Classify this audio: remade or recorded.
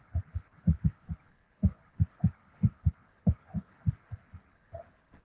remade